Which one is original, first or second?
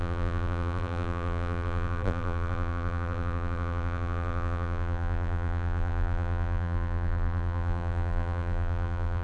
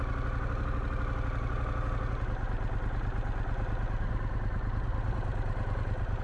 second